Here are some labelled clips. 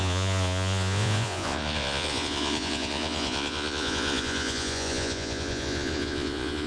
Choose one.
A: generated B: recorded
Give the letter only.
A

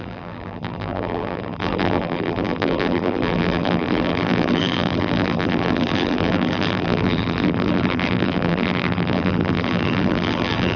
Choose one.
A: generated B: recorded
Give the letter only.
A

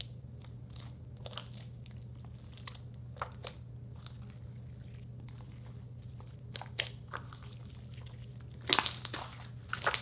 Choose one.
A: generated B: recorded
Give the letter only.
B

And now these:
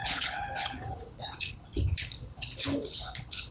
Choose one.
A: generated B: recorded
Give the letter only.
A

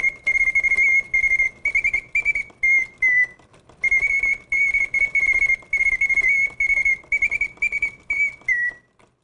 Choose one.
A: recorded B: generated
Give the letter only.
A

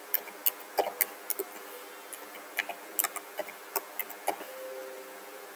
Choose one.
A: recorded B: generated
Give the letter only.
A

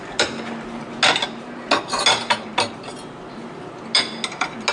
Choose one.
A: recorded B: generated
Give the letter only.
A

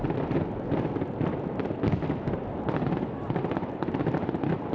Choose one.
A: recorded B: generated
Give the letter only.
A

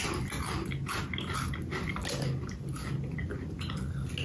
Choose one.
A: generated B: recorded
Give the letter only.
B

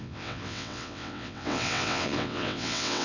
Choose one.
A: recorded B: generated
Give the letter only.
B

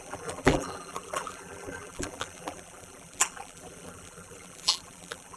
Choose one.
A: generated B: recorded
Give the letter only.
A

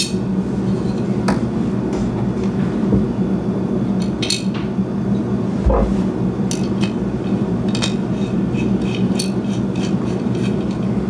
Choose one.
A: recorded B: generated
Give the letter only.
A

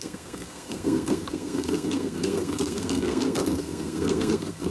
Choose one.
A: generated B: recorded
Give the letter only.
A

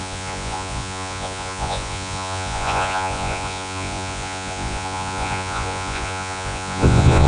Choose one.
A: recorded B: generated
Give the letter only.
B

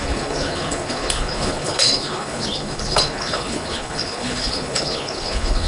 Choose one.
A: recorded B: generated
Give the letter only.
B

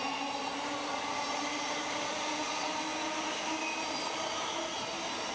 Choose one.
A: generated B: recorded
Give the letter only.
B